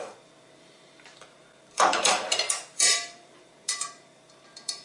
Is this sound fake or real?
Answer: fake